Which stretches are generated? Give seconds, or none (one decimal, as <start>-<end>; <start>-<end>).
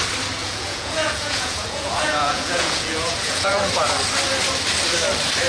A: 0.4-3.7